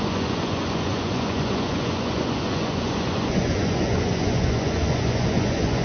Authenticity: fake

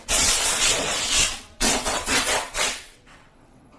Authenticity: fake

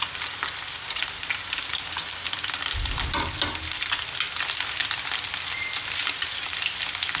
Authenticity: real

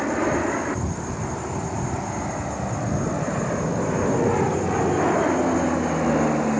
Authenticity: real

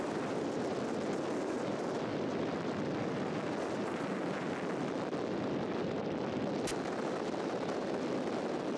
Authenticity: real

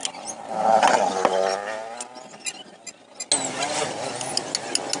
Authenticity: real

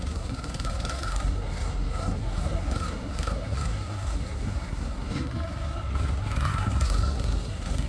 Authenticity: fake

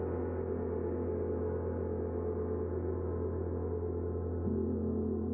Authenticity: real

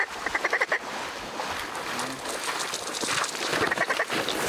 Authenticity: real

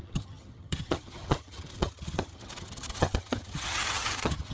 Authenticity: fake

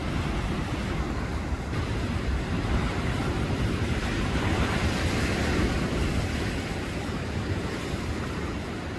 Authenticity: fake